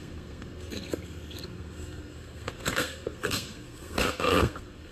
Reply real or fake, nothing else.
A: fake